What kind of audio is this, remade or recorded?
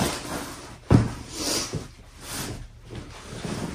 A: recorded